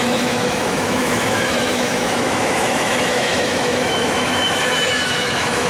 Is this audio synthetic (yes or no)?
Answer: yes